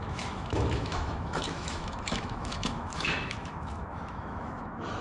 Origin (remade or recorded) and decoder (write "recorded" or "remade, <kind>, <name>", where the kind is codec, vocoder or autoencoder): remade, autoencoder, DAC-VAE